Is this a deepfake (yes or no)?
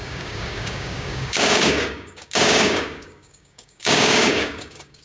yes